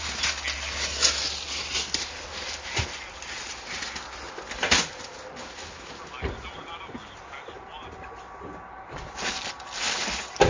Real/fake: real